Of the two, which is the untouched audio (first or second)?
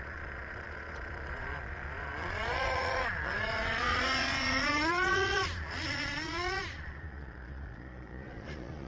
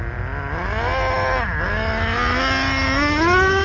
second